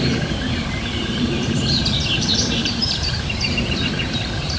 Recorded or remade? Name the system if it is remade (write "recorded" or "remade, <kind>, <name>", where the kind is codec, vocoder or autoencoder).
remade, vocoder, BigVGAN v2